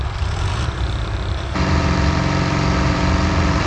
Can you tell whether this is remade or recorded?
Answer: remade